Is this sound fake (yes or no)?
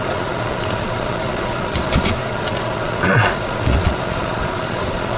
yes